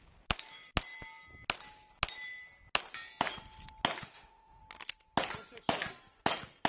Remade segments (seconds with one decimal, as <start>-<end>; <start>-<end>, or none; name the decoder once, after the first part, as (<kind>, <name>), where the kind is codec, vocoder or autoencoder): 4.0-4.6 (autoencoder, DAC-VAE)